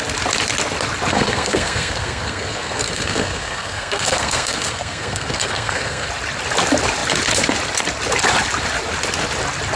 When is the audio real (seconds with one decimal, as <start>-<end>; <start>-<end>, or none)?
0.0-1.1; 6.1-9.8